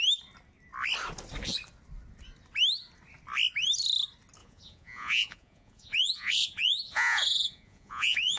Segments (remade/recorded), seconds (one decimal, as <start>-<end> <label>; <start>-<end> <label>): 0.0-4.4 recorded; 4.4-8.4 remade